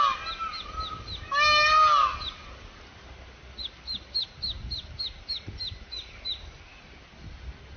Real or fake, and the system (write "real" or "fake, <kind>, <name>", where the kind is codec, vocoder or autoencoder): real